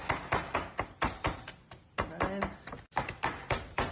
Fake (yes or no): no